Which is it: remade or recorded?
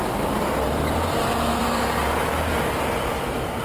remade